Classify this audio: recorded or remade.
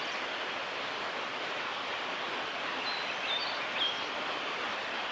recorded